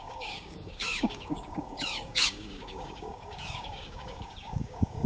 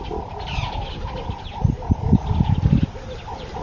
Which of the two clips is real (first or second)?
second